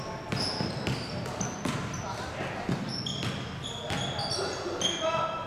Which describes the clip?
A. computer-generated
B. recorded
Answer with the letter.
B